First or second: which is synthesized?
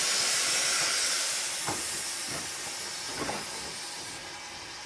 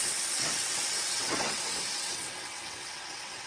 second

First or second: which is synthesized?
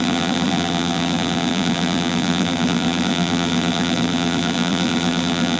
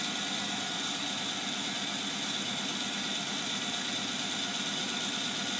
first